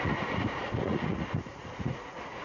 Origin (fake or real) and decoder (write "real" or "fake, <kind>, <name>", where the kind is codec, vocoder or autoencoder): fake, vocoder, Vocos